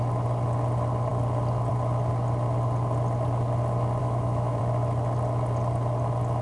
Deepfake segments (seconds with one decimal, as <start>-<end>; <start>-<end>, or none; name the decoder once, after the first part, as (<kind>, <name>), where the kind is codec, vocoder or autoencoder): 4.0-4.6 (autoencoder, DAC-VAE)